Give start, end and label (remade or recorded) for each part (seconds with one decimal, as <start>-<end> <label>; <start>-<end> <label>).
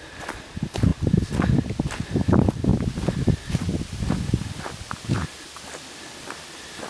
0.0-6.9 recorded